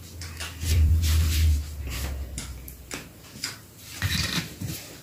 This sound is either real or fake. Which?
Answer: fake